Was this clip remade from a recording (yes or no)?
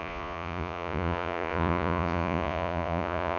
yes